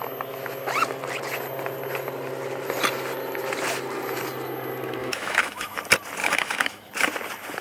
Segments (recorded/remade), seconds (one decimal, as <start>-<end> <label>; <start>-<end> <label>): 0.0-5.0 recorded; 5.0-5.8 remade; 5.8-6.2 recorded; 6.2-6.9 remade; 6.9-7.6 recorded

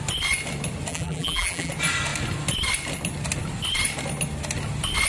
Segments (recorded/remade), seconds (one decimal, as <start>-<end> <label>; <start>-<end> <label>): 0.0-0.9 recorded; 0.9-1.7 remade; 1.7-5.1 recorded

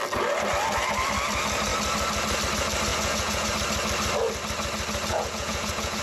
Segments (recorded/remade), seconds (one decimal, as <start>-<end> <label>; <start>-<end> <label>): 0.0-2.9 recorded; 2.9-3.5 remade; 3.5-5.1 recorded; 5.1-6.0 remade